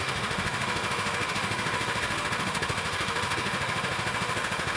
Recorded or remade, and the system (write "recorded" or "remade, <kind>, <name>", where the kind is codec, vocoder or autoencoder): remade, autoencoder, DAC-VAE